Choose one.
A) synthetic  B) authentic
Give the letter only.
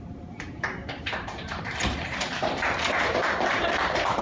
A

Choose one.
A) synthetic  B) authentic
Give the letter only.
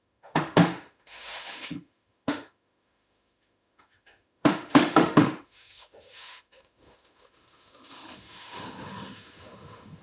A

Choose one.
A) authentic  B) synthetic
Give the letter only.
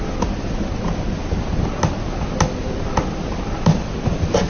A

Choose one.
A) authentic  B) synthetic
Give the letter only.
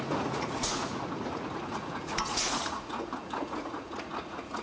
B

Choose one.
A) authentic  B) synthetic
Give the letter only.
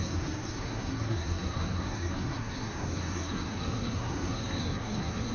B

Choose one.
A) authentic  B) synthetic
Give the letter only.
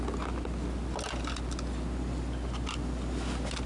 A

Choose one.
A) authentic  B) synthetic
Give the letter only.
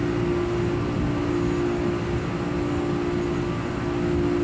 A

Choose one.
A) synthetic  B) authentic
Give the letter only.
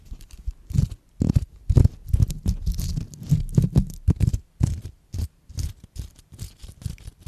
B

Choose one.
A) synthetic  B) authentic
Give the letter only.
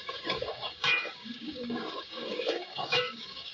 A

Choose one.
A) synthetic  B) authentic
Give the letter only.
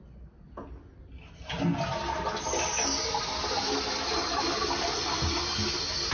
B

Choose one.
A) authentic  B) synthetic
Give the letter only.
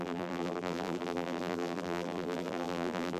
B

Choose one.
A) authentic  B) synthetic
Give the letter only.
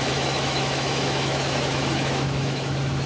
B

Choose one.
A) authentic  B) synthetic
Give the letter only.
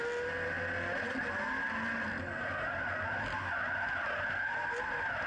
A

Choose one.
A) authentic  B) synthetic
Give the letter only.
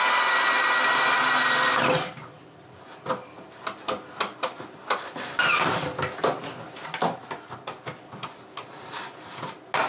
A